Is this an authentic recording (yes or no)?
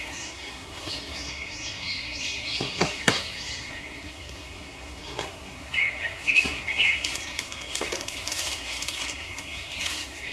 no